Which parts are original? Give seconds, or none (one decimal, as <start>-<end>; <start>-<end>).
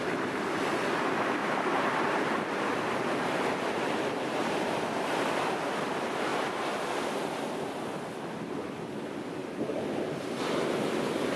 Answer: 0.0-1.4; 5.3-6.3; 6.8-9.4; 10.8-11.4